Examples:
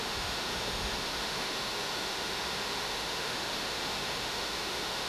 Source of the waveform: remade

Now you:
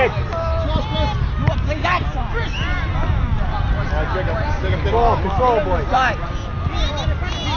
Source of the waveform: recorded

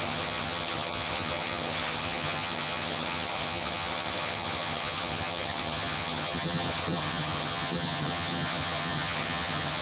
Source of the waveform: remade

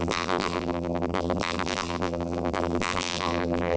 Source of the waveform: remade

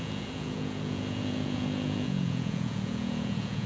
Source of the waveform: remade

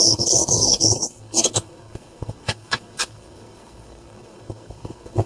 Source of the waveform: remade